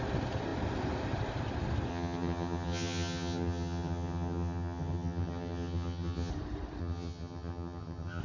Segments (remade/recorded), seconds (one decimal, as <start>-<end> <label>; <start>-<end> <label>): 0.0-1.9 recorded; 1.9-6.3 remade; 6.3-6.8 recorded; 6.8-8.2 remade